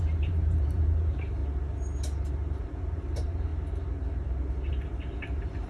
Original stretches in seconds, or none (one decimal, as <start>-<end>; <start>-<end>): 1.4-2.3; 3.5-4.7